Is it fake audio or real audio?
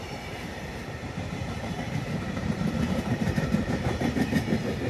fake